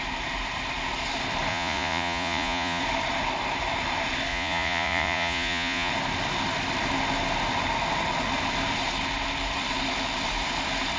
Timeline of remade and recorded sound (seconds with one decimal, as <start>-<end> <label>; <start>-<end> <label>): 0.0-1.5 recorded; 1.5-2.8 remade; 2.8-4.3 recorded; 4.3-5.9 remade; 5.9-11.0 recorded